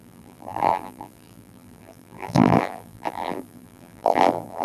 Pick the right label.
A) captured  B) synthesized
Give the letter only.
B